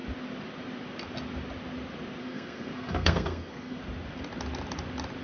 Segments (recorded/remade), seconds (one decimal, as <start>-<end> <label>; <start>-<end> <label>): 0.0-2.2 recorded; 2.2-3.8 remade; 3.8-5.2 recorded